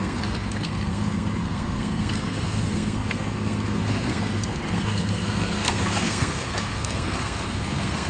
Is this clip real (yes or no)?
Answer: no